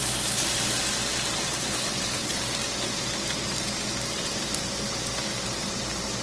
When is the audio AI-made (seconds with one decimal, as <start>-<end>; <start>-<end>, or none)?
1.5-2.4